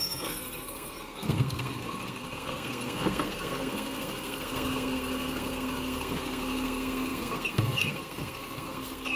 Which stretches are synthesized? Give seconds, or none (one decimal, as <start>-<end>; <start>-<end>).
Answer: 0.0-9.2